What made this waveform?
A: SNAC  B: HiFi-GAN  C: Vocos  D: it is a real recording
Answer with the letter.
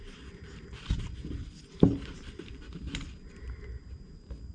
D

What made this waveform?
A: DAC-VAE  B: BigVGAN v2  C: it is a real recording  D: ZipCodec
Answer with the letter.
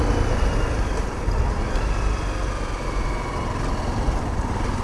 C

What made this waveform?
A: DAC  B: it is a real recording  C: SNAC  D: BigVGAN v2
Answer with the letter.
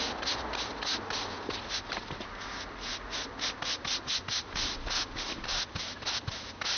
B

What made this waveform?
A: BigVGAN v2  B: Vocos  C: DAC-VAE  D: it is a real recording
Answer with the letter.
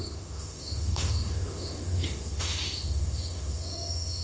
C